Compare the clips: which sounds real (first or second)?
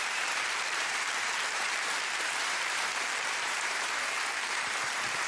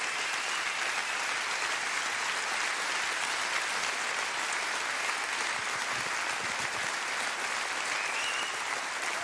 second